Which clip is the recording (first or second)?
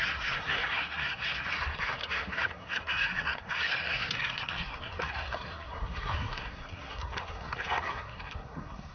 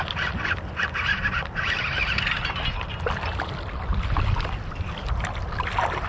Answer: second